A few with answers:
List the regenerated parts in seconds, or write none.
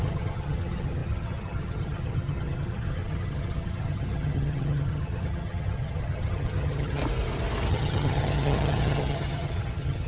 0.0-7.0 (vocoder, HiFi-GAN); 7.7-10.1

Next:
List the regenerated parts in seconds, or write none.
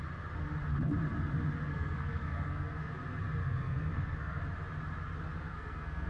1.7-2.9 (codec, SNAC); 3.4-4.4; 5.5-6.1